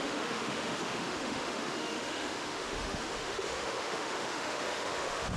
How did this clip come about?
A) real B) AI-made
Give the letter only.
B